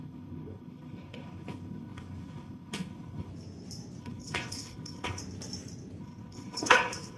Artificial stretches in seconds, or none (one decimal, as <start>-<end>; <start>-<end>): 0.0-3.3; 4.0-5.2; 6.0-7.2